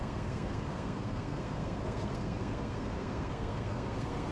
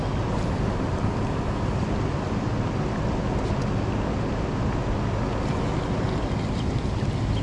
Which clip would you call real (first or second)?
second